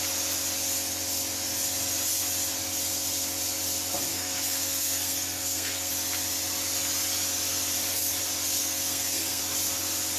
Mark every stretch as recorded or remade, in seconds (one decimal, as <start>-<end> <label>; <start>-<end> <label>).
0.0-4.1 recorded; 4.1-5.9 remade; 5.9-8.6 recorded; 8.6-9.4 remade; 9.4-10.2 recorded